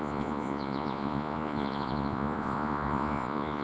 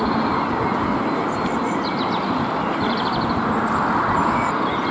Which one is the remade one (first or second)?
first